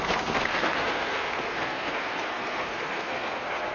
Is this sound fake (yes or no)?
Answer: yes